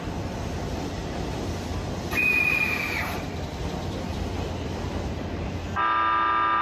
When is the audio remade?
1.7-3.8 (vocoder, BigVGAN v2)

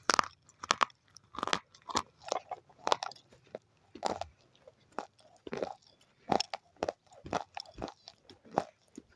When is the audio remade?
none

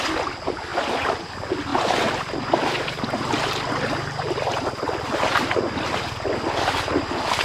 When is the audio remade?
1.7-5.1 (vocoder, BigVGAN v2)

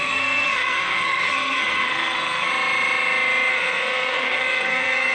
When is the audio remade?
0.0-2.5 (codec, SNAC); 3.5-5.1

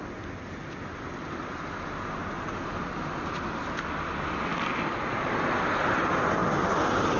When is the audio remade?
none

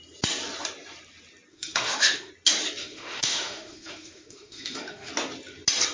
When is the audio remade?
1.5-2.3 (autoencoder, DAC-VAE); 2.8-5.1

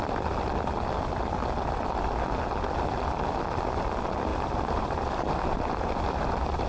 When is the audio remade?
4.3-6.7 (vocoder, BigVGAN v2)